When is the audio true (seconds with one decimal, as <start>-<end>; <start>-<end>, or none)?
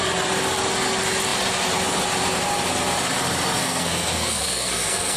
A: 0.0-3.6